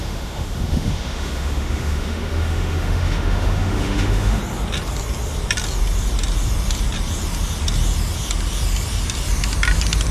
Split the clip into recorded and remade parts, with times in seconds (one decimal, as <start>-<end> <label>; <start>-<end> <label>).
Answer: 0.0-4.4 remade; 4.4-10.1 recorded